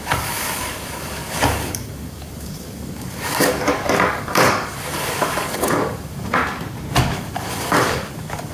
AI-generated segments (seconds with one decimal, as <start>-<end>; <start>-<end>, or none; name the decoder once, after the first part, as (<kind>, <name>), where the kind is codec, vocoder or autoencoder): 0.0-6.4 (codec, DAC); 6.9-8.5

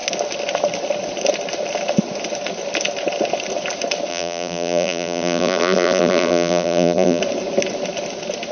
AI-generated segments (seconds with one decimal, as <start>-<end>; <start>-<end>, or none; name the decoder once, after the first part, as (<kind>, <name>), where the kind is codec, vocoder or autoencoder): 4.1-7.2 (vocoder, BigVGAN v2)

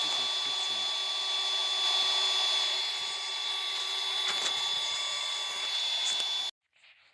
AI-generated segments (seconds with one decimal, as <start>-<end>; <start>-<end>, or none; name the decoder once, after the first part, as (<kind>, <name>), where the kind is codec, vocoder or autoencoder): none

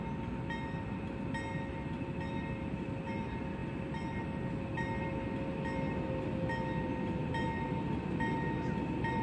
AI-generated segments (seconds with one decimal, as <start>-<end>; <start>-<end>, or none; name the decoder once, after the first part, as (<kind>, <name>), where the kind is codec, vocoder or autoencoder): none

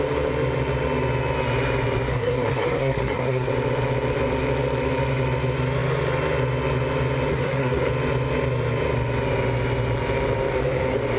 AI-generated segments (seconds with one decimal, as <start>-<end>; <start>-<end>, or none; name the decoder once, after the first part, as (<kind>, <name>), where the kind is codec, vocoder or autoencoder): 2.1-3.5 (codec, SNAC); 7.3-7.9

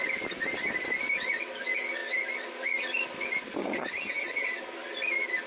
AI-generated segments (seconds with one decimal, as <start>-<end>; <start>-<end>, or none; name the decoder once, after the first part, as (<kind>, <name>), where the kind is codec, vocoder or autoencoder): 3.6-4.6 (vocoder, HiFi-GAN)

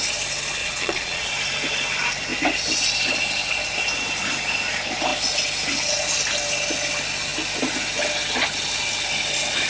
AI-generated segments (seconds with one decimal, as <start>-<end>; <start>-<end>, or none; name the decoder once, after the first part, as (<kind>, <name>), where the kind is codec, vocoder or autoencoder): 0.6-1.3 (vocoder, Vocos)